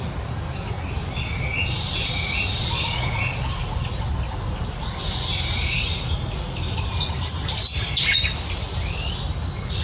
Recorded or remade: recorded